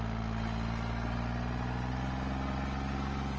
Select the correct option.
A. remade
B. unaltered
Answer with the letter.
B